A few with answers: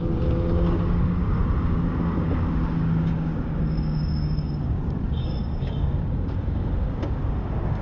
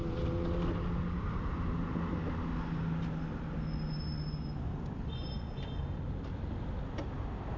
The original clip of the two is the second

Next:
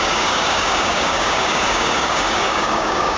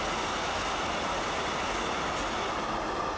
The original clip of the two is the second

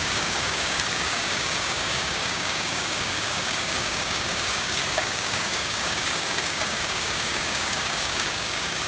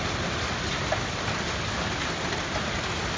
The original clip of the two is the second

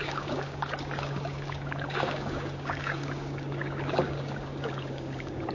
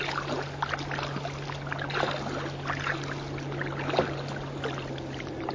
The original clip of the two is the second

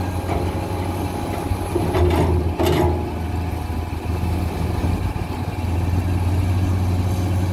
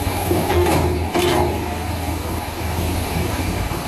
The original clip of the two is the first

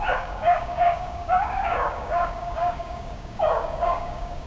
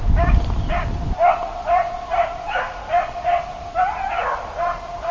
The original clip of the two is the second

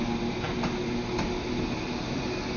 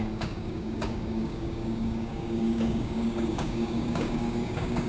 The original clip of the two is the first